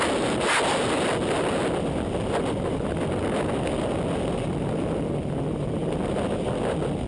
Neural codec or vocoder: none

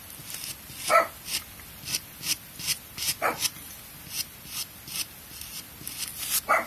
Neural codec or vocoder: none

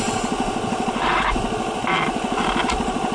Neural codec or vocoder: none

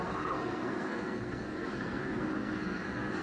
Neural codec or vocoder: codec, SNAC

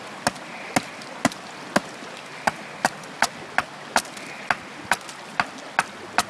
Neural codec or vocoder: none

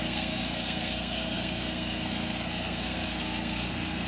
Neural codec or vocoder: codec, SNAC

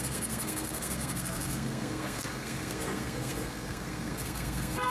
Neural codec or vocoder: codec, SNAC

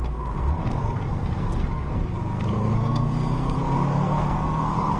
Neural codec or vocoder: codec, SNAC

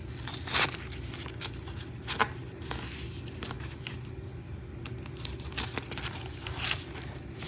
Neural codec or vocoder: none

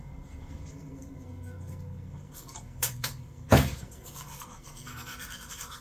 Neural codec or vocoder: codec, SNAC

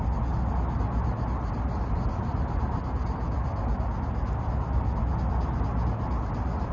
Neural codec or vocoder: none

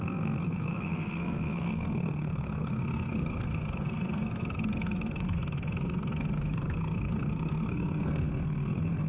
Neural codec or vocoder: codec, SNAC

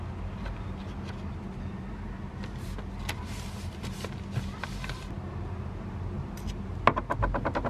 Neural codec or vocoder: none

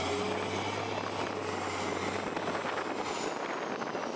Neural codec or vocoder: none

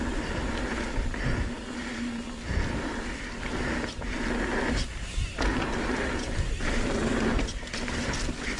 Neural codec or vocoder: none